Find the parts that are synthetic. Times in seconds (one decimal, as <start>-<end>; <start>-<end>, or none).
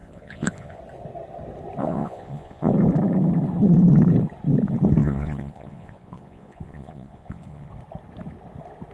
0.0-0.8; 1.8-2.7; 5.0-7.7